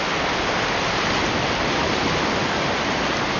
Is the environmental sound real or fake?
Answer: real